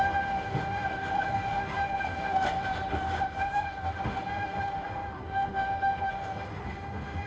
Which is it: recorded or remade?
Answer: remade